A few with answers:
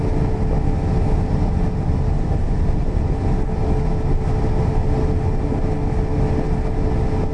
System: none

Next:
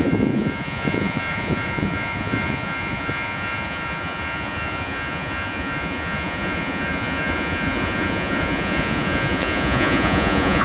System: vocoder, Vocos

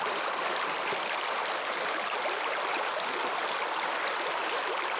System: none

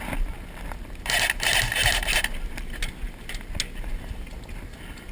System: none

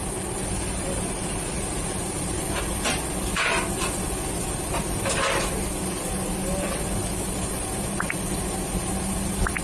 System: none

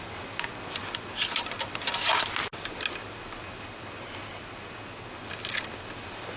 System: none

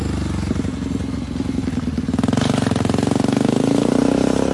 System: none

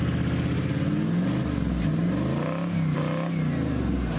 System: none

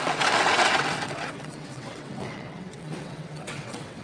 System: vocoder, WaveNeXt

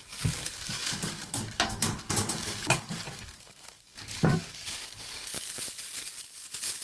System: codec, DAC